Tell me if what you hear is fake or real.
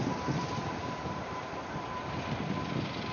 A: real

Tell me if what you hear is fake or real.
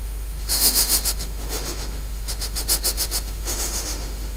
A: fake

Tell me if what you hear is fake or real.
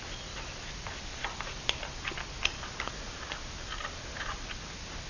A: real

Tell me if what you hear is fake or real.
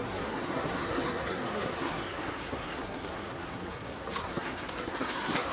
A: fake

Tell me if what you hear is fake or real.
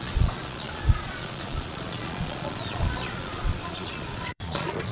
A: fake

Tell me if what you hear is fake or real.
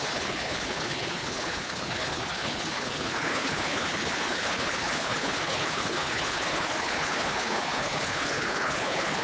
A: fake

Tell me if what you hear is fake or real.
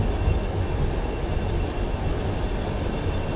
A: real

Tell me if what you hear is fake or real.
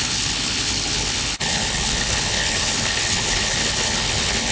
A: fake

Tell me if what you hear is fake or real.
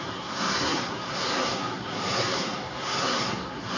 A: fake